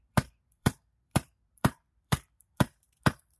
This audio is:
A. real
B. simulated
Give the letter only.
B